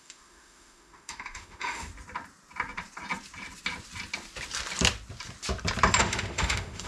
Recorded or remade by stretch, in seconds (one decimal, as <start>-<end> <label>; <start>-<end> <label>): 0.0-1.9 remade; 1.9-6.0 recorded; 6.0-6.9 remade